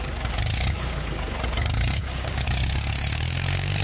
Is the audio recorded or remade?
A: remade